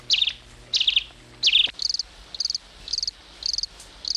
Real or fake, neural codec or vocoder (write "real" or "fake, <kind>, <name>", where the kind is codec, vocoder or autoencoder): real